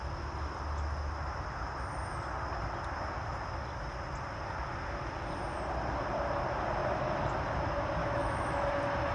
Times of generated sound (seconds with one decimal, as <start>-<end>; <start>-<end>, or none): 8.0-8.7